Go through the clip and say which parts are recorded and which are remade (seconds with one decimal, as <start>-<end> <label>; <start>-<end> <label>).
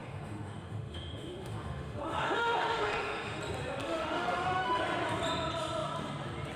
0.0-3.4 remade; 3.4-3.8 recorded; 3.8-4.8 remade; 4.8-6.6 recorded